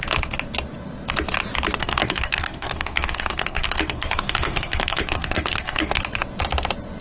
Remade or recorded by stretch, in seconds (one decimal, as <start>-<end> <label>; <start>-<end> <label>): 0.0-1.8 recorded; 1.8-6.0 remade; 6.0-7.0 recorded